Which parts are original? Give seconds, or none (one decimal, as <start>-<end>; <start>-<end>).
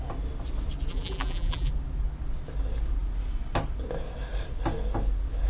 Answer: 0.0-0.9; 1.7-5.5